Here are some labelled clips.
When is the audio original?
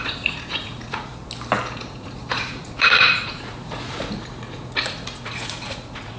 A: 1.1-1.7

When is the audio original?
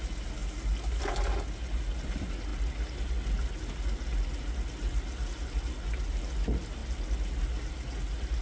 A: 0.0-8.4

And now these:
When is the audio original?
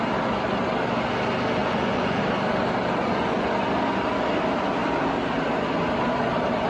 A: 0.0-1.6; 2.2-3.0; 3.5-6.7